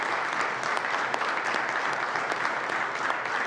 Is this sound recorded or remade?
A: recorded